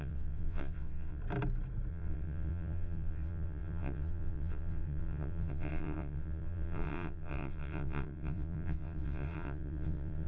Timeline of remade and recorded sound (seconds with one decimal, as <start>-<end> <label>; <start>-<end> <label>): 0.0-1.2 remade; 1.2-1.9 recorded; 1.9-10.3 remade